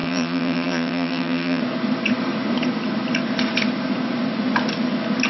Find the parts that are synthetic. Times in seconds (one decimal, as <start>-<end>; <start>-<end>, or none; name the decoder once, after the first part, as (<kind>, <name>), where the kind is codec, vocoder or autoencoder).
0.0-1.6 (vocoder, HiFi-GAN)